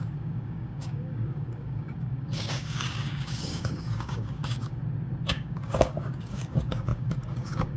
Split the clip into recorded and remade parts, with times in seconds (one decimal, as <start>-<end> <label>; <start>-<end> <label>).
0.0-4.8 remade; 4.8-5.3 recorded; 5.3-7.8 remade